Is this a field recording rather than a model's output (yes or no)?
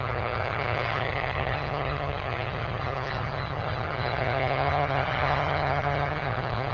no